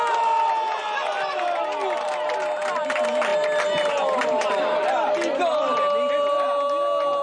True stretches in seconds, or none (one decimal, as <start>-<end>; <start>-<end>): 0.0-7.2